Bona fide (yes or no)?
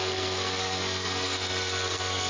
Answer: no